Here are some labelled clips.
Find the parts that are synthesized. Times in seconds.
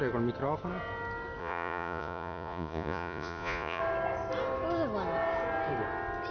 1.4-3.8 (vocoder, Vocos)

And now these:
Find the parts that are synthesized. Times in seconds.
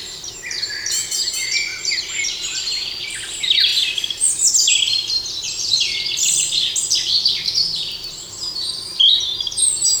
4.9-9.0 (vocoder, BigVGAN v2)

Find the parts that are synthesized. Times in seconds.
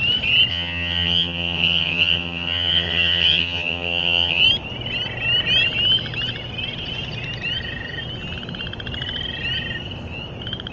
0.5-4.4 (vocoder, HiFi-GAN)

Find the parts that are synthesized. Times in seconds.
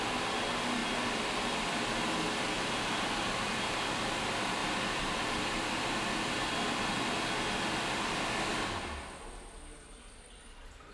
0.8-3.6 (vocoder, BigVGAN v2); 4.6-7.0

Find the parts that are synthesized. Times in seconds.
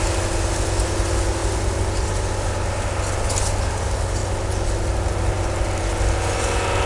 none